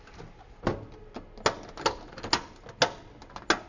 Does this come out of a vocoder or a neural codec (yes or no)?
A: no